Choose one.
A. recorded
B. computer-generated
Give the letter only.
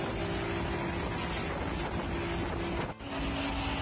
A